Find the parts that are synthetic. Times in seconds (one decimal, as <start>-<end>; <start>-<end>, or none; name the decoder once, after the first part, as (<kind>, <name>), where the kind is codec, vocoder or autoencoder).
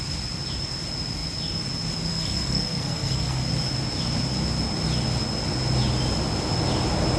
2.1-3.5 (codec, SNAC)